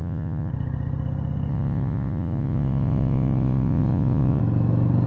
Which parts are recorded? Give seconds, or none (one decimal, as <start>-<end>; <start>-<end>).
0.5-1.5; 4.4-5.1